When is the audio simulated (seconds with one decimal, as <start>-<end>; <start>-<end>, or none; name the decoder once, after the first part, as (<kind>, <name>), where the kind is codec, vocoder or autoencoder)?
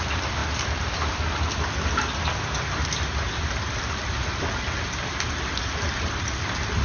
none